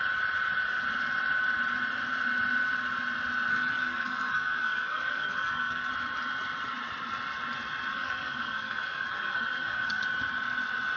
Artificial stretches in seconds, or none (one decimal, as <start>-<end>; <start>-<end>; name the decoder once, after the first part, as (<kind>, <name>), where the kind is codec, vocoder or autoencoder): 3.5-5.9 (codec, SNAC); 7.9-10.0